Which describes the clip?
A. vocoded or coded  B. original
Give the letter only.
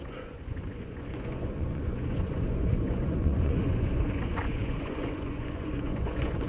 A